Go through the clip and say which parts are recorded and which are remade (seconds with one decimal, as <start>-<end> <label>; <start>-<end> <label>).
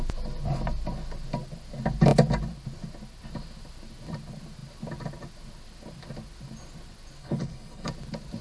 0.0-7.2 recorded; 7.2-7.9 remade; 7.9-8.4 recorded